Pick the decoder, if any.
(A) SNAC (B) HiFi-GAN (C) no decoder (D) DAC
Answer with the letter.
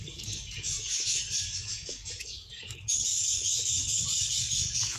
D